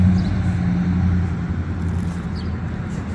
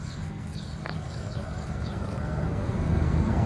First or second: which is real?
first